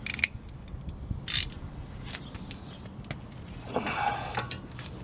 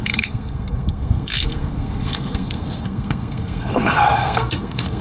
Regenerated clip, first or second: second